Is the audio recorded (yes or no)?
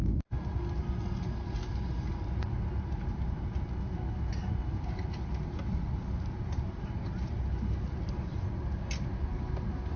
yes